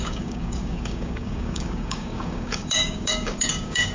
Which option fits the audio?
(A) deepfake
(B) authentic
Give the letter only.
A